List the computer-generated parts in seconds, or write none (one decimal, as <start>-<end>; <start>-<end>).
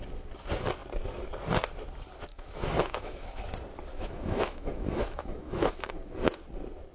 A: 2.3-3.4; 3.9-6.0